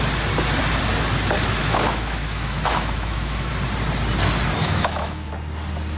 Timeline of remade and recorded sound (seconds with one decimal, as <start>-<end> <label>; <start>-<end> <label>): 0.0-1.6 recorded; 1.6-3.5 remade; 3.5-4.6 recorded; 4.6-5.3 remade; 5.3-6.0 recorded

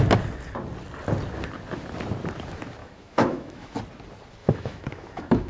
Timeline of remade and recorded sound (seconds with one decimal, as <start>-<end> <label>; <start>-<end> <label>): 0.0-2.8 recorded; 2.8-3.8 remade; 3.8-4.4 recorded; 4.4-5.5 remade

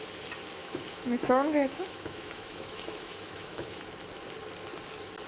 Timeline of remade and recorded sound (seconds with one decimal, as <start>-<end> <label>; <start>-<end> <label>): 0.0-0.6 recorded; 0.6-3.8 remade; 3.8-5.3 recorded

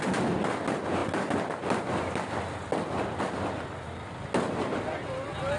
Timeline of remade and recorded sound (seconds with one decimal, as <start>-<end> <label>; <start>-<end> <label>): 0.0-5.6 recorded

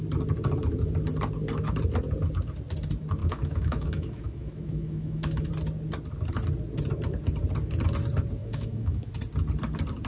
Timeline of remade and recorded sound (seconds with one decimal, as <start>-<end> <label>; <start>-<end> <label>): 0.0-3.2 recorded; 3.2-5.5 remade; 5.5-8.4 recorded; 8.4-9.1 remade; 9.1-10.1 recorded

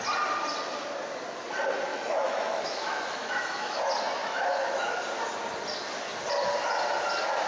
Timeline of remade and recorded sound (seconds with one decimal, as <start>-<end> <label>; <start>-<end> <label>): 0.0-1.9 recorded; 1.9-3.8 remade; 3.8-4.2 recorded; 4.2-5.0 remade; 5.0-7.5 recorded

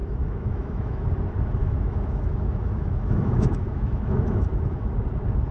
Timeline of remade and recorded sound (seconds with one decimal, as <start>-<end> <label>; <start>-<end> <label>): 0.0-1.1 remade; 1.1-1.6 recorded; 1.6-4.9 remade; 4.9-5.5 recorded